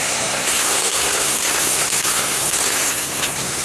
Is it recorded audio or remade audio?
remade